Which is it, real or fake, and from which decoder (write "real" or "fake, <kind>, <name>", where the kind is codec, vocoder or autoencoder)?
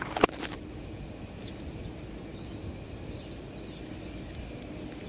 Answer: real